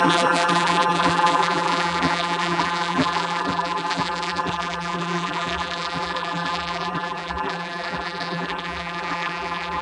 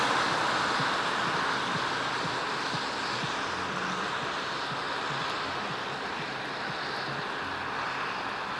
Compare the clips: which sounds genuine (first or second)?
second